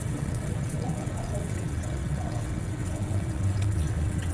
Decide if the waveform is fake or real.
fake